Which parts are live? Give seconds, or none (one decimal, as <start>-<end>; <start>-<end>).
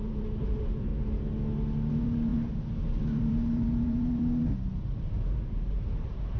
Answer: 0.9-1.9; 4.4-5.7